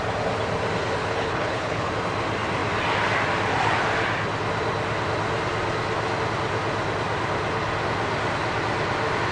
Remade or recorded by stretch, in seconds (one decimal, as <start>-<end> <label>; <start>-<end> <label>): 0.0-1.0 recorded; 1.0-1.9 remade; 1.9-9.3 recorded